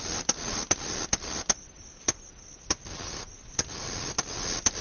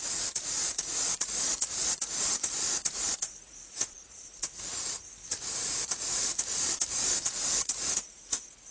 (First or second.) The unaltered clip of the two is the first